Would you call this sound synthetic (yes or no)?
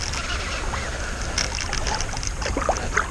no